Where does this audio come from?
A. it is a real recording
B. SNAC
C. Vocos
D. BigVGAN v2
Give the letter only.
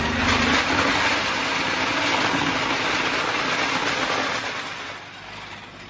A